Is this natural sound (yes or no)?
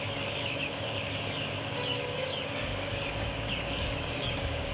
no